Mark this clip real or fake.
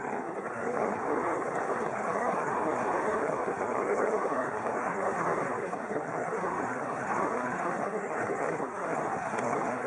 fake